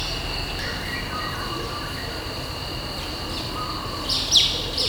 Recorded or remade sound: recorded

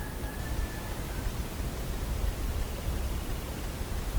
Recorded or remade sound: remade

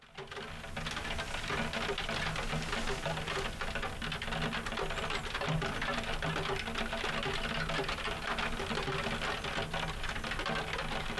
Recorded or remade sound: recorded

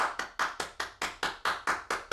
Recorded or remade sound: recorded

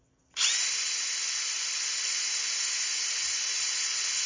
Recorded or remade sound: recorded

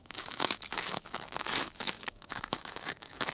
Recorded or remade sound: remade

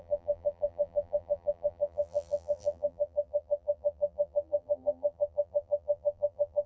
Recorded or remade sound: remade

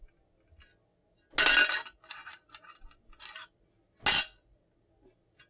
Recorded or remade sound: recorded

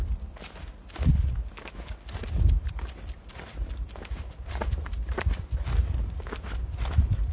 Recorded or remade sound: recorded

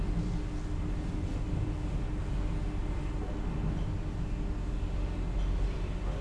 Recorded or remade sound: recorded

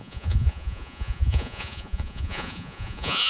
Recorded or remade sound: remade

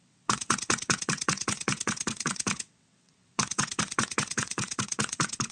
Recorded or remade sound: remade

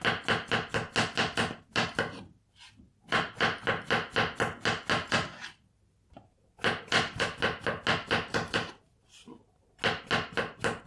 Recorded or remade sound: recorded